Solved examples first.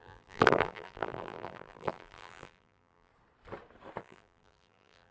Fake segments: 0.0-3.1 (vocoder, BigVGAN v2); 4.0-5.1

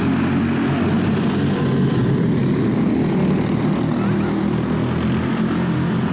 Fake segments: none

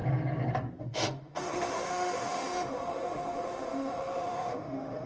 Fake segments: 0.8-5.1 (autoencoder, DAC-VAE)

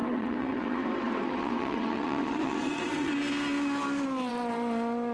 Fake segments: 0.0-3.1 (vocoder, WaveNeXt)

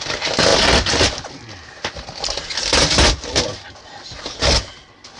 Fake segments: none

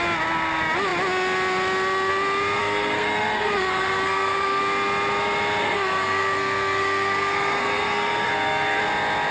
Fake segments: 2.6-4.6 (codec, SNAC); 5.6-8.8

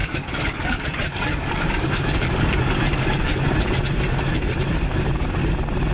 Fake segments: 0.0-3.5 (codec, DAC)

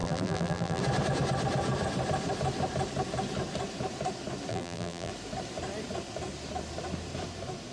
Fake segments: 0.0-0.8 (vocoder, BigVGAN v2); 4.5-5.1